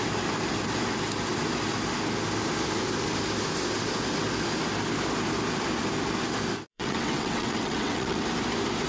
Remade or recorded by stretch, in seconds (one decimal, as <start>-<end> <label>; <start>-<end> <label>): 0.0-6.7 recorded; 6.7-8.2 remade; 8.2-8.9 recorded